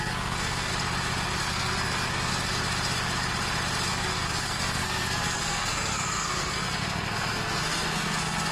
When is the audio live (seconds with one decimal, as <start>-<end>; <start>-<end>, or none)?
0.7-1.4; 2.3-3.9